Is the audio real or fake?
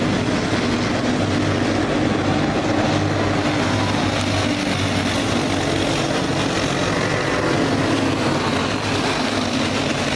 real